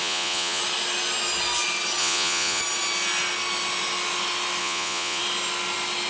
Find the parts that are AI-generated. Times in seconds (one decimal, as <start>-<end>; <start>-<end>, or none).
0.0-0.6; 2.0-2.6; 4.6-5.2